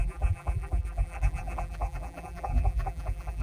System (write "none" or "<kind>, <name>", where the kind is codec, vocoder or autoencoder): vocoder, BigVGAN v2